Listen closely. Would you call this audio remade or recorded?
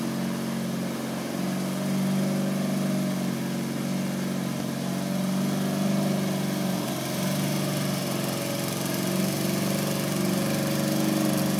recorded